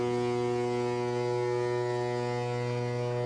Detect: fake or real real